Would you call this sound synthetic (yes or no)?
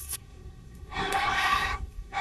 yes